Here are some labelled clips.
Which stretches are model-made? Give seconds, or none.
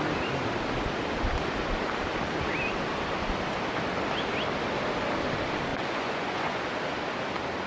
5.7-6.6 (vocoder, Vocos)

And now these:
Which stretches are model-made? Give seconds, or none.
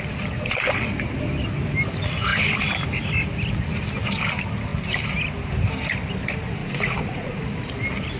6.6-7.4 (vocoder, Vocos)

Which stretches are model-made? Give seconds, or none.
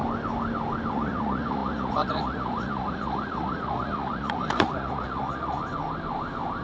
0.9-5.6 (vocoder, Vocos)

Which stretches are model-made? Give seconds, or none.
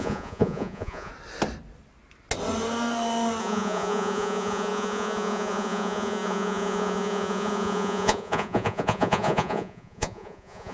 0.0-1.1 (vocoder, Vocos); 3.4-10.7